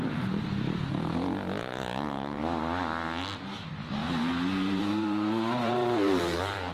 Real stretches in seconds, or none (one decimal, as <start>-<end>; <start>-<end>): 1.1-3.2